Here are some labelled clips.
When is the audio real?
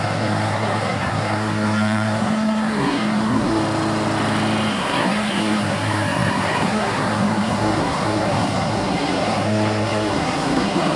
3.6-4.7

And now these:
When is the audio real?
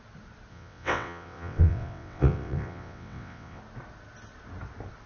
0.0-0.5; 3.6-5.1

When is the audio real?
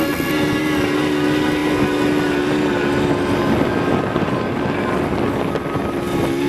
0.0-6.5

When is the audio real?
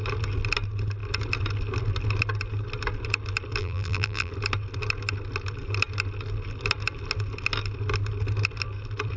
0.0-3.6; 4.3-9.2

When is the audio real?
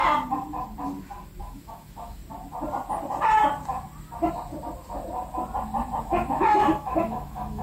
0.0-1.4; 2.2-6.0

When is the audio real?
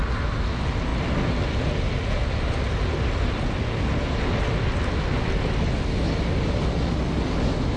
0.0-7.8